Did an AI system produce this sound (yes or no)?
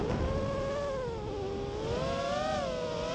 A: no